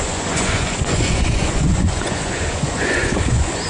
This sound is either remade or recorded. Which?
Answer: remade